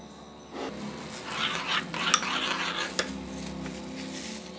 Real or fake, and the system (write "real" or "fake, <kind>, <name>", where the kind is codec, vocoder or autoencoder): real